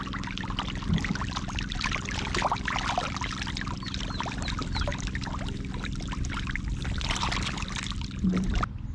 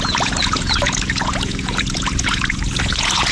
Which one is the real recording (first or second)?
first